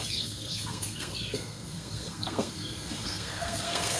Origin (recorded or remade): remade